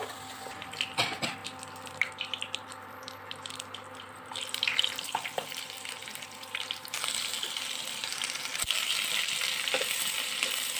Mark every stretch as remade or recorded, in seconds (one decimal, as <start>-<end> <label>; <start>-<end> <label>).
0.0-10.8 remade